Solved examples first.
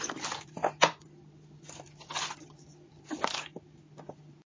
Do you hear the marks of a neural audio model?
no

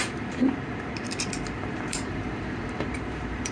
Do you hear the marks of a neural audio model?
yes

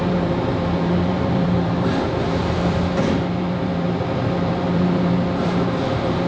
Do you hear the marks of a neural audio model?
yes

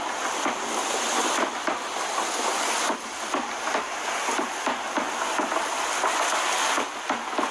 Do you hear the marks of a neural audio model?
yes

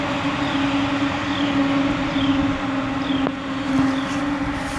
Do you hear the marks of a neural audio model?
no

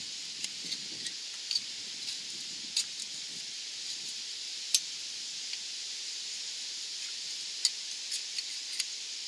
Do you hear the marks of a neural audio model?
no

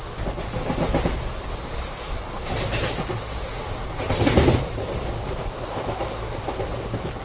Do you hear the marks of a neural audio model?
no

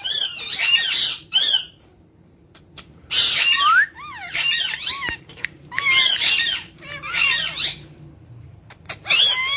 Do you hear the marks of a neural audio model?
yes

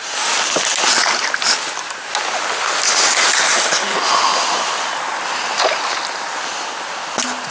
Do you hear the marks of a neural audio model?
no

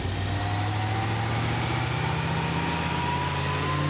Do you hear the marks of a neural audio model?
no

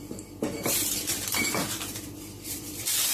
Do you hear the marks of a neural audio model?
yes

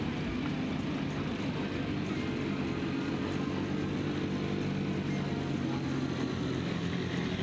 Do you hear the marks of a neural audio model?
no